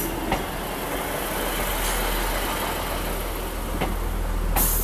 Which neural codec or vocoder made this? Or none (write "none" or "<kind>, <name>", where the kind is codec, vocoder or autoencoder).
none